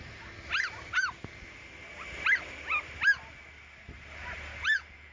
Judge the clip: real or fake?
real